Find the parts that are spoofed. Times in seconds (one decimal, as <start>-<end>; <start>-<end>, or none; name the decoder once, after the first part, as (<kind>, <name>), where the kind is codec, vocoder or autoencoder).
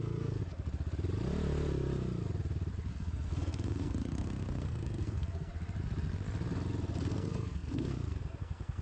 0.0-0.4 (codec, SNAC); 2.9-5.5; 7.0-8.8